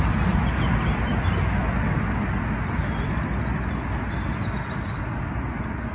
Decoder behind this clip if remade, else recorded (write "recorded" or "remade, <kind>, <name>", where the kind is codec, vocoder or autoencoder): recorded